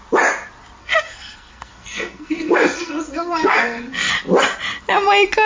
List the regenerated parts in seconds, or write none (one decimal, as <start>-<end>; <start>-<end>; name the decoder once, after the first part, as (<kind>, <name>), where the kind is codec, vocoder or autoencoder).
0.8-4.1 (codec, SNAC)